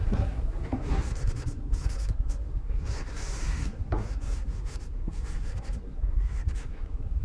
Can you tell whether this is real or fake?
fake